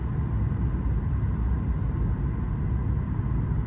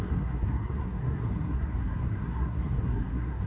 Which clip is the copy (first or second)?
second